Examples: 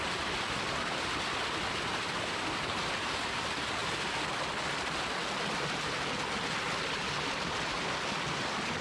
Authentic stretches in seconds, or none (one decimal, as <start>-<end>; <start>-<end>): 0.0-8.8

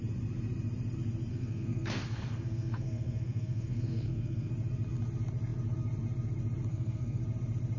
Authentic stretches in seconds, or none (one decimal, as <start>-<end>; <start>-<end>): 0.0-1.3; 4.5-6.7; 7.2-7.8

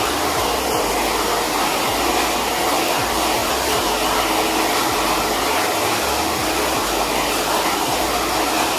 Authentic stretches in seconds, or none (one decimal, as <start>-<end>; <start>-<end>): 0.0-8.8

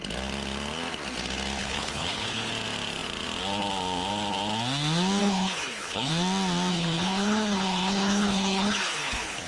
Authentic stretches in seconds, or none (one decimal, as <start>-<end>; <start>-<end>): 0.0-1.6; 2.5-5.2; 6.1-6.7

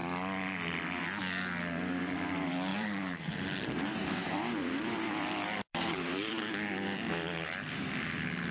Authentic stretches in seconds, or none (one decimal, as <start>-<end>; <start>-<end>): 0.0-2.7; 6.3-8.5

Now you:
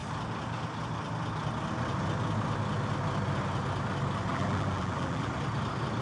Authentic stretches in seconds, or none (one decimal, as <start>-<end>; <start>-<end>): 0.0-4.3; 5.3-6.0

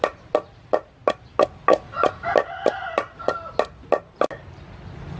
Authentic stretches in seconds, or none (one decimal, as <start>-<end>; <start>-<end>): 0.0-5.2

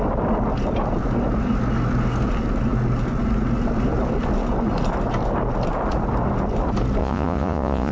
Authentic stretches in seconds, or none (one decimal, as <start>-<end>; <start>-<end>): 0.0-7.0